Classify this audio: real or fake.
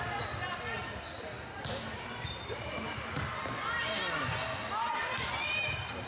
real